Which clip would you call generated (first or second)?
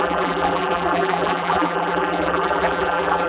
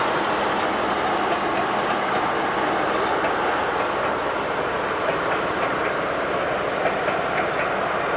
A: first